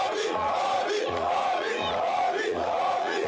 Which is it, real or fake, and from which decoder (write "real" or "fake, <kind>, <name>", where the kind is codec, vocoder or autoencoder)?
fake, vocoder, Vocos